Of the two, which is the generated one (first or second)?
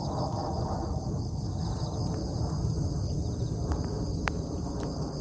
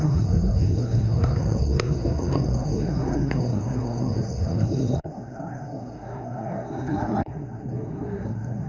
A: second